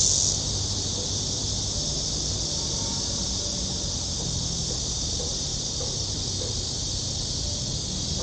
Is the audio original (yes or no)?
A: yes